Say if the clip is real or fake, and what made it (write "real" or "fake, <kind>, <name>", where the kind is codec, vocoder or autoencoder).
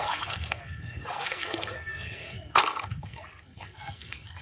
fake, codec, SNAC